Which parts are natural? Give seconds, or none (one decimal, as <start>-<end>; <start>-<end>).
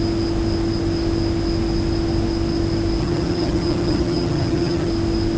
0.0-3.0; 4.9-5.4